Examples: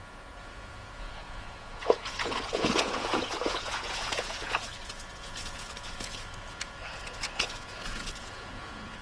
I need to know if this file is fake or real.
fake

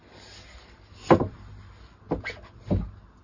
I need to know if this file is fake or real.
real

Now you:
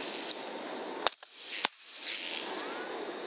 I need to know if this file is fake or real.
real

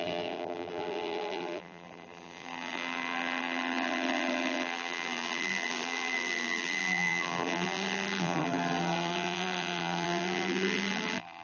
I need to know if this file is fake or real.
fake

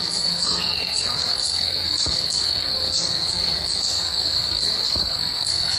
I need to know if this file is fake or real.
fake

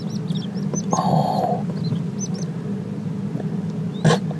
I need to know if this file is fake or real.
real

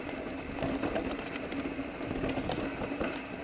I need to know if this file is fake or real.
real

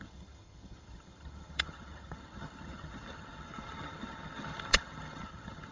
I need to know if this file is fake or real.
fake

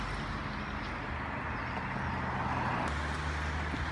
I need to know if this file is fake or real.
real